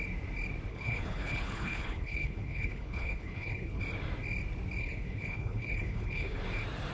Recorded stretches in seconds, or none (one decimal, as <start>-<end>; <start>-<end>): 0.0-0.7; 3.8-4.8; 6.4-6.9